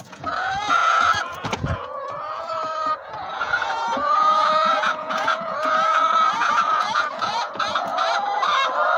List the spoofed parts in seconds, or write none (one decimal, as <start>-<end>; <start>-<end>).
0.0-7.9

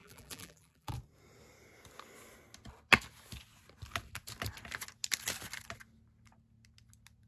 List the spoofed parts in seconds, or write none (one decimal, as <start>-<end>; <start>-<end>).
0.0-0.9

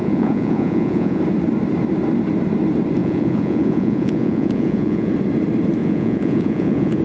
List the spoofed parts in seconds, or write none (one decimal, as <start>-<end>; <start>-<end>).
0.0-1.2; 3.0-5.1; 5.8-7.0

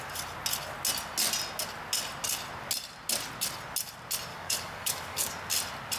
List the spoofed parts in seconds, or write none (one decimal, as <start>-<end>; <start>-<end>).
4.3-5.3

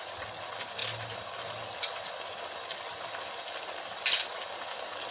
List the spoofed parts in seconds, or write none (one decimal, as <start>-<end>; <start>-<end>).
none

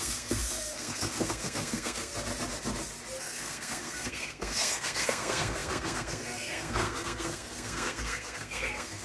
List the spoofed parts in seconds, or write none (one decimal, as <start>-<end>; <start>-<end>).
0.0-2.1; 3.2-9.0

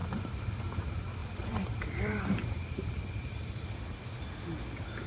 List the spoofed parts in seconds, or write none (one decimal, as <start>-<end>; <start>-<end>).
0.0-0.6; 1.2-4.3

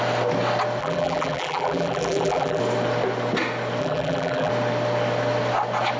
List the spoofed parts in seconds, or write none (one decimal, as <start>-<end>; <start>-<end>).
0.8-2.6; 3.8-4.5